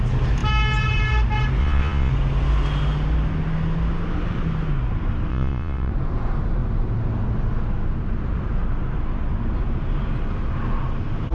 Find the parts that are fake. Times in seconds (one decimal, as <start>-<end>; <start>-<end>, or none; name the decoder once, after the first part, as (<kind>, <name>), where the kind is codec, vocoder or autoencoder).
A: 1.6-2.1 (vocoder, Vocos); 5.3-5.9